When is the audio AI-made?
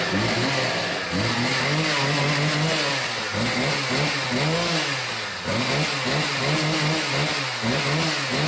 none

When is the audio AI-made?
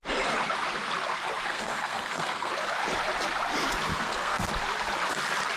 1.5-2.5 (codec, SNAC); 3.9-4.5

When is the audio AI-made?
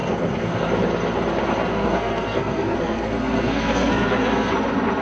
0.0-0.6 (codec, SNAC); 1.7-4.5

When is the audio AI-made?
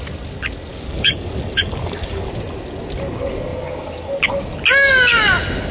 0.7-2.3 (codec, DAC)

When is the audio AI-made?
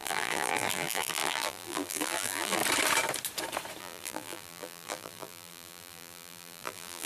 0.0-2.6 (vocoder, BigVGAN v2); 3.8-7.1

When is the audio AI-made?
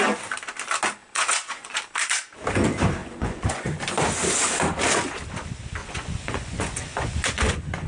1.0-1.8 (vocoder, Vocos); 3.0-3.8; 5.8-7.9